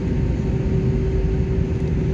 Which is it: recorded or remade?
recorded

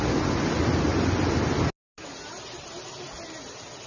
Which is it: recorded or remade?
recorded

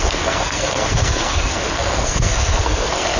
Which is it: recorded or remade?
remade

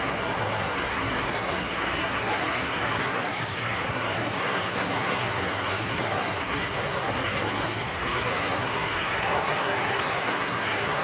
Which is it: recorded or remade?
remade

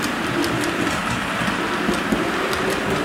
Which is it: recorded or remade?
recorded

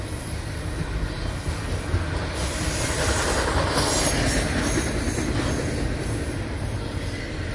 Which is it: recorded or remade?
recorded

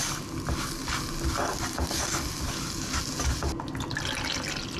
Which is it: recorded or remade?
recorded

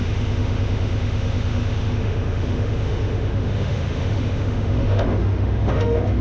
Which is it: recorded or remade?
remade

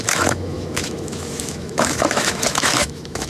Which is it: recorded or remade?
remade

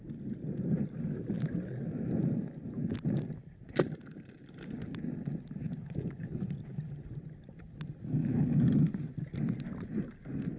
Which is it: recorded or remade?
recorded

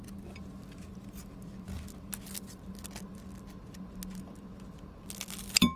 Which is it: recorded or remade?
recorded